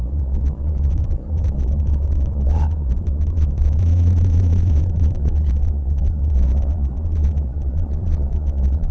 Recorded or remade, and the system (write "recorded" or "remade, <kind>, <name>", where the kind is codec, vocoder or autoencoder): remade, vocoder, Vocos